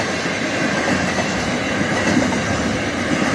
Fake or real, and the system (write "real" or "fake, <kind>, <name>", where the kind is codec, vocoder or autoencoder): real